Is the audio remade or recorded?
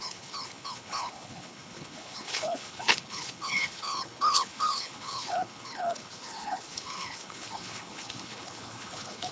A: remade